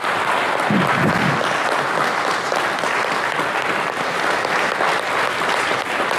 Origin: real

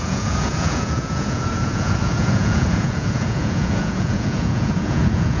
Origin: fake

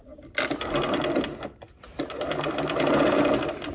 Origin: real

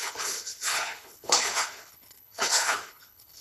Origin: fake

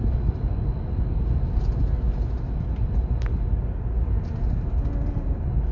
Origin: real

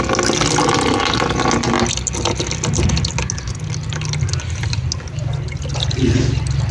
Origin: real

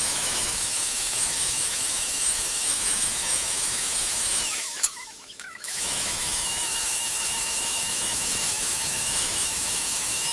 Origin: fake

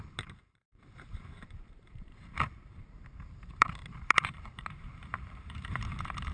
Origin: fake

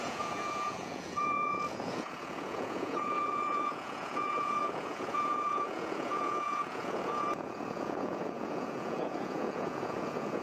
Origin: fake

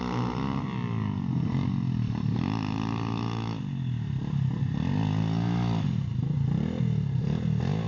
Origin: real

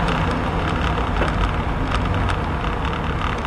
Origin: real